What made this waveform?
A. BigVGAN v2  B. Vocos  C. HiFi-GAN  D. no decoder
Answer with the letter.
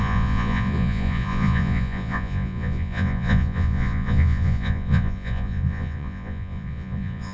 B